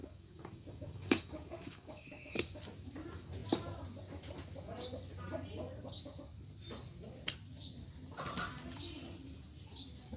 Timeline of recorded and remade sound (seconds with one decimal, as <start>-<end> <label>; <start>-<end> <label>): 0.0-2.6 remade; 2.6-10.2 recorded